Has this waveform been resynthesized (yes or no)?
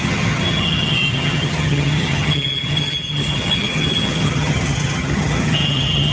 yes